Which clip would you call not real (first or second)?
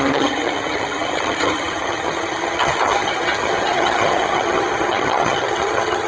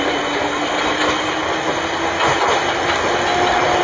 first